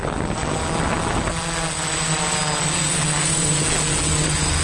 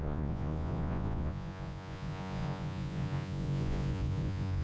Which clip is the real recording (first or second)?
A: first